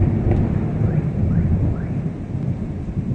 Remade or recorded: recorded